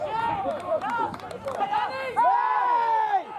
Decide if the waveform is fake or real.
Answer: real